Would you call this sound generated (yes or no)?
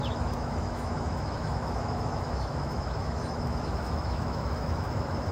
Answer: yes